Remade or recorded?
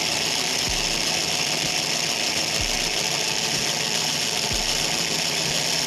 recorded